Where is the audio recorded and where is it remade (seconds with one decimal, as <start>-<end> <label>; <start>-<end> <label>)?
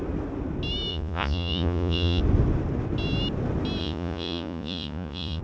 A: 0.0-0.9 recorded; 0.9-2.2 remade; 2.2-3.8 recorded; 3.8-5.4 remade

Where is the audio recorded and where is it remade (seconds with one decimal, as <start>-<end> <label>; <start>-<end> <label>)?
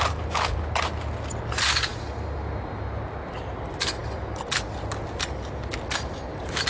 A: 0.0-6.7 recorded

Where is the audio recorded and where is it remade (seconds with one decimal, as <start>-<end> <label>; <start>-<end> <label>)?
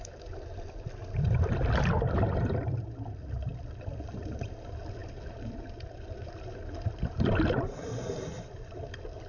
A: 0.0-9.3 recorded